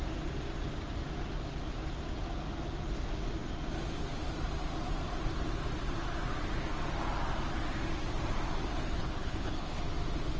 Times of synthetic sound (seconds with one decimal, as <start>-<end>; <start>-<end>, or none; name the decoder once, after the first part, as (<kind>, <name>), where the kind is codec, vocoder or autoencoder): 9.0-9.8 (codec, HILCodec)